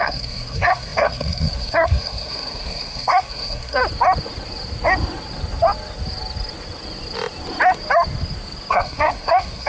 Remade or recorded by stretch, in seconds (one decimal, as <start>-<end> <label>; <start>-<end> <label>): 0.0-3.8 remade; 3.8-8.7 recorded; 8.7-9.7 remade